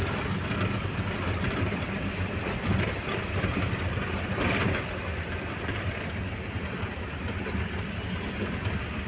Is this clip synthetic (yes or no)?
yes